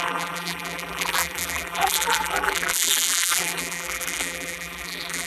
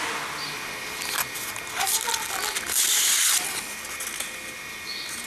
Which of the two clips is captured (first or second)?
second